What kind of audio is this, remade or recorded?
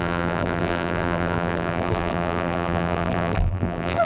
remade